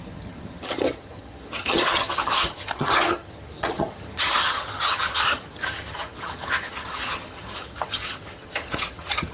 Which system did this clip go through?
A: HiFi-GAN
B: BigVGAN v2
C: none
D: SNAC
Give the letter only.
A